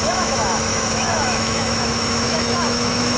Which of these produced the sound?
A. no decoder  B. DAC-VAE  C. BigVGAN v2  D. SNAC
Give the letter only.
B